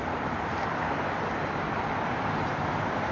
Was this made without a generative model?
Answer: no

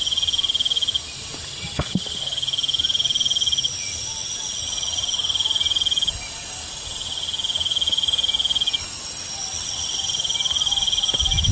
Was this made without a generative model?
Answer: yes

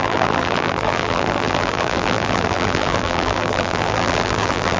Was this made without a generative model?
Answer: no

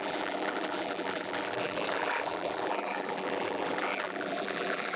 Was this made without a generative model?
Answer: no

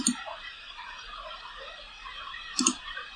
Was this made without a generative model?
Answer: no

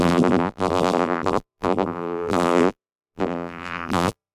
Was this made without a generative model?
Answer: no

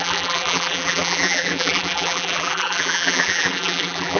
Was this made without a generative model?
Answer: no